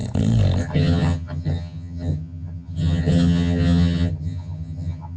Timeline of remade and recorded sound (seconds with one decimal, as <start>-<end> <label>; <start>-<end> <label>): 0.0-0.6 recorded; 0.6-5.2 remade

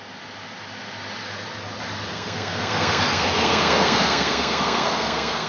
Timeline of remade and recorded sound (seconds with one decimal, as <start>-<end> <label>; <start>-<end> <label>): 0.0-2.1 recorded; 2.1-5.5 remade

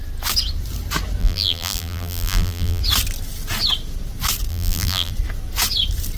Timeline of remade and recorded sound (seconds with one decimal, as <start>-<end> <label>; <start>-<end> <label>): 0.0-1.2 recorded; 1.2-2.8 remade; 2.8-4.5 recorded; 4.5-5.1 remade; 5.1-6.2 recorded

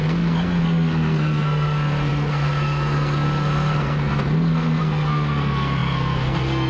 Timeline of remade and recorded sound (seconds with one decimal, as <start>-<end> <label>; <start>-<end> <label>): 0.0-6.7 remade

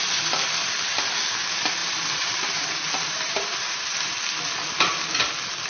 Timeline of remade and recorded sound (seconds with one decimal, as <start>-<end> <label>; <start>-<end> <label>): 0.0-1.8 recorded; 1.8-4.1 remade; 4.1-5.7 recorded